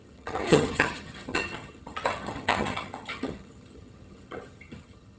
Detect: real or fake fake